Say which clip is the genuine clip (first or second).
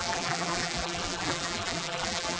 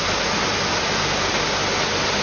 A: second